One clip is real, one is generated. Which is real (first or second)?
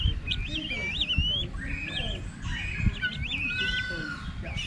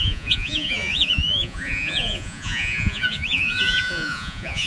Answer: first